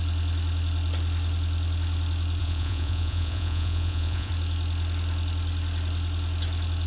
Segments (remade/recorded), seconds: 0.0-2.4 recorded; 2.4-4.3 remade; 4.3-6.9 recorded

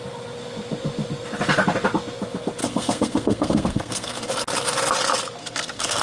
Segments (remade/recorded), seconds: 0.0-2.6 recorded; 2.6-4.3 remade; 4.3-5.4 recorded; 5.4-6.0 remade

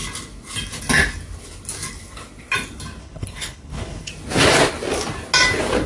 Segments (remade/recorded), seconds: 0.0-3.0 recorded; 3.0-4.1 remade; 4.1-5.9 recorded

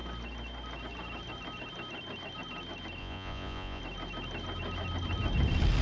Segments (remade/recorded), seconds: 0.0-3.0 recorded; 3.0-3.8 remade; 3.8-5.8 recorded